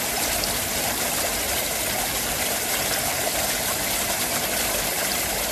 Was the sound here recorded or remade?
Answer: recorded